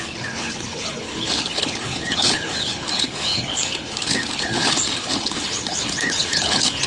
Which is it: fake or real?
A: fake